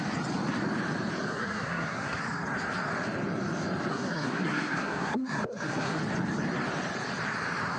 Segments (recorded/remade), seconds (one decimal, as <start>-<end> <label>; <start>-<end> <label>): 0.0-1.3 recorded; 1.3-2.2 remade; 2.2-3.9 recorded; 3.9-6.0 remade; 6.0-7.8 recorded